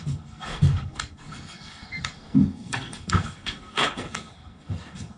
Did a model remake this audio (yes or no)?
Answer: yes